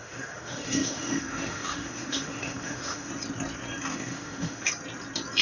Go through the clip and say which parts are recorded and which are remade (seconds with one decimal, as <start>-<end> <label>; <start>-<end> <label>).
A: 0.0-3.1 remade; 3.1-3.9 recorded; 3.9-4.7 remade; 4.7-5.4 recorded